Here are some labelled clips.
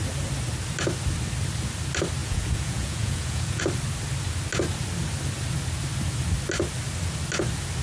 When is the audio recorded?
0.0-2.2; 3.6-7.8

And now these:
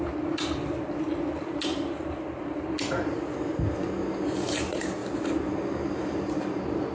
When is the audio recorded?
0.0-6.9

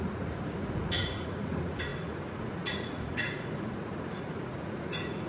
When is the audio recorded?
none

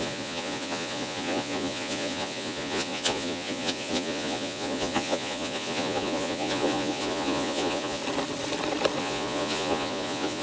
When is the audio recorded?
8.0-9.0